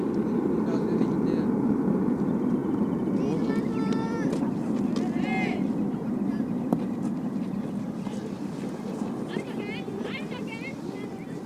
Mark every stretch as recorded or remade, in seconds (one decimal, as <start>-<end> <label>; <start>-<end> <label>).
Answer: 0.0-11.5 recorded